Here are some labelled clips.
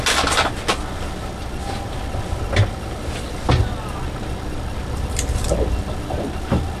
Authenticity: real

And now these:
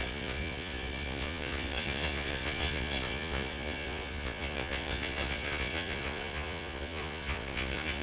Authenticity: fake